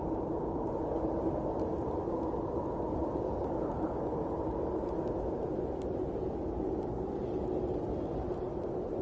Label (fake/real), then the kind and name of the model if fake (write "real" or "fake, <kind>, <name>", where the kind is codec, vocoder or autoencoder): real